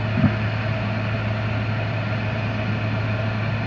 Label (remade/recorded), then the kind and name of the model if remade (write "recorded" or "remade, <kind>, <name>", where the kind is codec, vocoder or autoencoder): recorded